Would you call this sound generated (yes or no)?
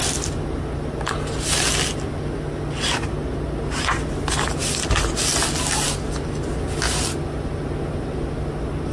no